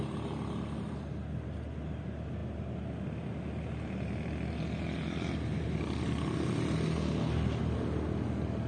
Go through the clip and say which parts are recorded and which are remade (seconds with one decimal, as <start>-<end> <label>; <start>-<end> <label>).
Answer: 0.0-8.7 recorded

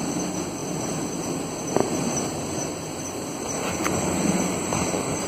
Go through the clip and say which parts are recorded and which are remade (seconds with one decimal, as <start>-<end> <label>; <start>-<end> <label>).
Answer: 0.0-1.8 recorded; 1.8-5.3 remade

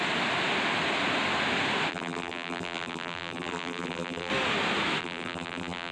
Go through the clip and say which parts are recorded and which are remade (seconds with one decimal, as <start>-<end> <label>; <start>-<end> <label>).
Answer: 0.0-1.9 recorded; 1.9-4.3 remade; 4.3-5.0 recorded; 5.0-5.9 remade

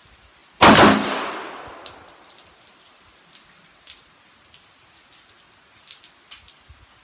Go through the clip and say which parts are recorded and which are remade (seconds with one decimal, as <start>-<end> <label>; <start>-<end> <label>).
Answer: 0.0-7.0 recorded

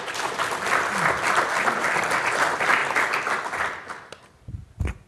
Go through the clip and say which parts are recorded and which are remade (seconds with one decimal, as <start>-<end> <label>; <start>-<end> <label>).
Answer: 0.0-5.1 recorded